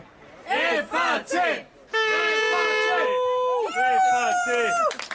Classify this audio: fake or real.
real